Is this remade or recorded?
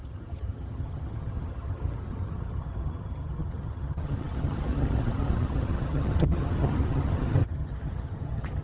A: remade